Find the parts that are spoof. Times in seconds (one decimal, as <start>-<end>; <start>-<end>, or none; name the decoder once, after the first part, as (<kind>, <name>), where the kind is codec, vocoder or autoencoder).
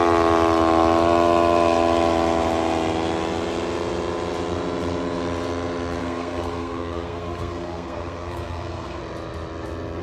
6.0-9.0 (codec, SNAC)